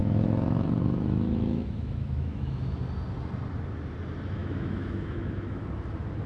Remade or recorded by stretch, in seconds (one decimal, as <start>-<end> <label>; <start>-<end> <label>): 0.0-2.8 remade; 2.8-4.4 recorded; 4.4-5.6 remade; 5.6-6.3 recorded